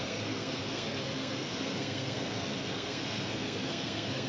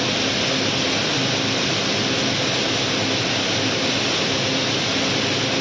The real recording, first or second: second